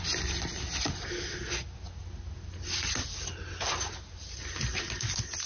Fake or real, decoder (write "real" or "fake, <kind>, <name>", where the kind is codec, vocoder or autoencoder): real